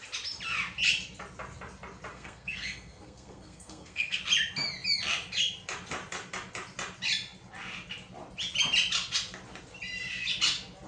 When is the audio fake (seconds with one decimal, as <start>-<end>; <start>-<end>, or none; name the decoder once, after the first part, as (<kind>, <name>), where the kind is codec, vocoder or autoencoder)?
2.1-4.2 (codec, SNAC)